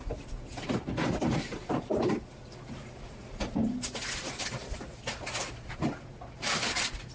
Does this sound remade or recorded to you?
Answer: recorded